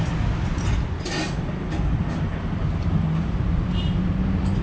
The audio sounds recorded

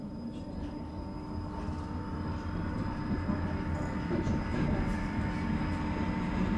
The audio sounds recorded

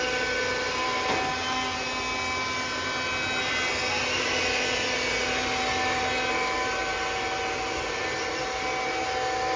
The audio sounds recorded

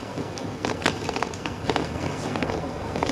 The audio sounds remade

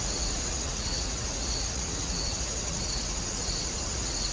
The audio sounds remade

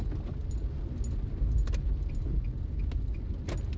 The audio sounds recorded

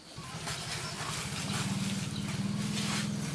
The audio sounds recorded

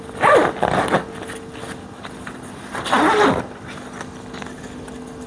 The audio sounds recorded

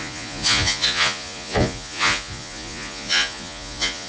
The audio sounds remade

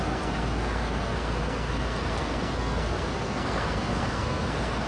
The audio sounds remade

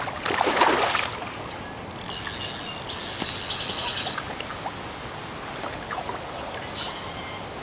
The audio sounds recorded